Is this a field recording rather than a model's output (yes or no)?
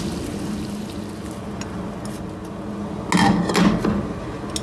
yes